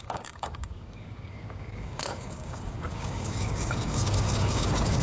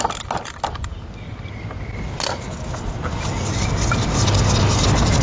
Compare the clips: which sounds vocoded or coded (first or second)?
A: first